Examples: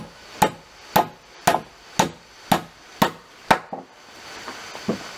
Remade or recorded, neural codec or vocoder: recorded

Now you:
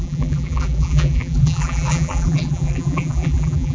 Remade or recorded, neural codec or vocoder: remade, vocoder, BigVGAN v2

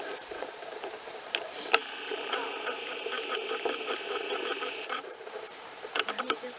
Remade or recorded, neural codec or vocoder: remade, vocoder, BigVGAN v2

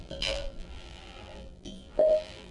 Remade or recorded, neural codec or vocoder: remade, vocoder, BigVGAN v2